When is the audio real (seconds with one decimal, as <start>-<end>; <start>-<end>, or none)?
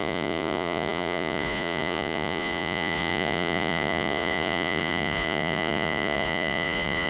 none